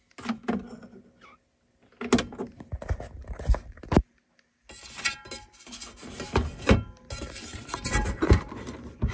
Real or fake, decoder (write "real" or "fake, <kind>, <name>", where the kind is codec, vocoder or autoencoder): real